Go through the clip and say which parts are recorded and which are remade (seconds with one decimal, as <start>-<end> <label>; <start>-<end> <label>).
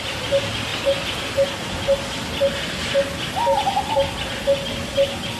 0.0-5.4 recorded